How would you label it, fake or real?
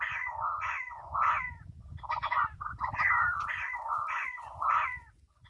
fake